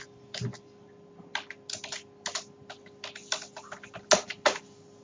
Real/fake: real